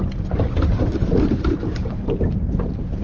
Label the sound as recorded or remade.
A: remade